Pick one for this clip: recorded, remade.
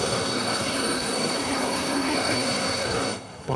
remade